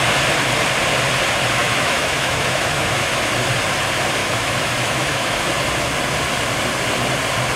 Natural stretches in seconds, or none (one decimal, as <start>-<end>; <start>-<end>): 0.0-1.6; 3.2-4.2; 5.5-7.6